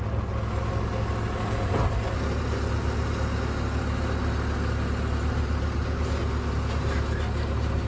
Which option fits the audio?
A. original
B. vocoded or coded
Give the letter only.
A